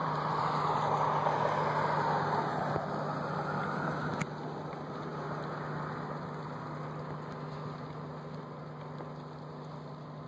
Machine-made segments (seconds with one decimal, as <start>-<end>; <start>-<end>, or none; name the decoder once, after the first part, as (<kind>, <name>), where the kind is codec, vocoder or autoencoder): 0.0-0.7 (vocoder, BigVGAN v2)